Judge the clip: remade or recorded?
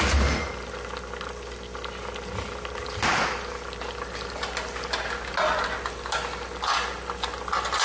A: recorded